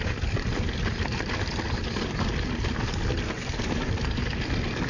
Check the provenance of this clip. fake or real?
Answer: real